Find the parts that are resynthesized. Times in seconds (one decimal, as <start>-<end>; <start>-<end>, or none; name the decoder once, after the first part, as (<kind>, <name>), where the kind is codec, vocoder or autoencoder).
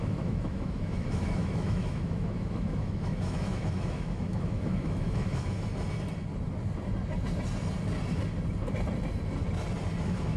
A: 0.0-5.7 (autoencoder, DAC-VAE); 10.0-10.4